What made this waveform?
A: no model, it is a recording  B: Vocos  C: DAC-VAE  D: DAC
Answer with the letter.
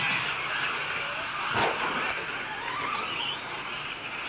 A